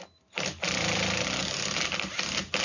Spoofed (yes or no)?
no